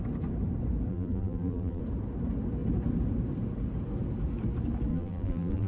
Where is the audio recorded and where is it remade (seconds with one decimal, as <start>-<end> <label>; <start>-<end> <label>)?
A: 0.0-0.9 recorded; 0.9-1.8 remade; 1.8-4.9 recorded; 4.9-5.7 remade